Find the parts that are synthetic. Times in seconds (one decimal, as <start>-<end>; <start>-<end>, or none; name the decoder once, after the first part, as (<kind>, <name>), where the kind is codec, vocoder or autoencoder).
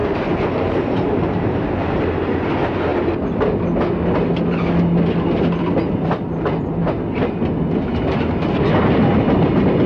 0.0-2.1 (vocoder, BigVGAN v2)